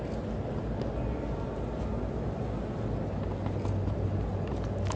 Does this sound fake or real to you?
real